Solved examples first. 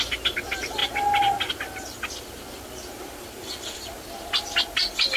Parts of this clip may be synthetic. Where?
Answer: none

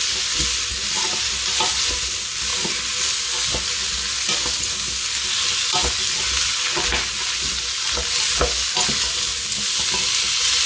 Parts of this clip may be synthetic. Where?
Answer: none

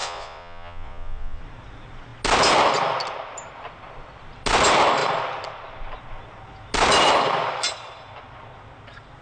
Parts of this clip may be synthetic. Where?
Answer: 0.0-1.4

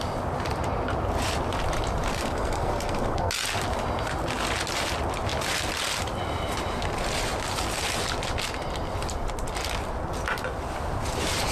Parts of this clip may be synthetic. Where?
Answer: 2.1-3.3